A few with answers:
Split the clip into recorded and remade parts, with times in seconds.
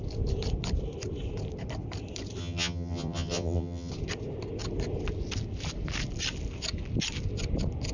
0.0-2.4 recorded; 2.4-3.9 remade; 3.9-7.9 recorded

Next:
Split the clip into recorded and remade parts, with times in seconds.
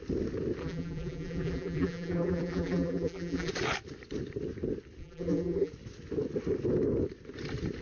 0.0-0.6 recorded; 0.6-3.5 remade; 3.5-5.0 recorded; 5.0-5.7 remade; 5.7-7.8 recorded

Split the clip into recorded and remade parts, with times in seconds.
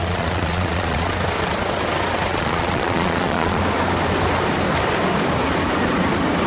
0.0-1.1 remade; 1.1-2.3 recorded; 2.3-3.6 remade; 3.6-6.5 recorded